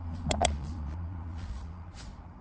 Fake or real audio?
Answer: fake